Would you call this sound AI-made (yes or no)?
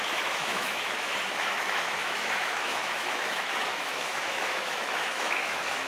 yes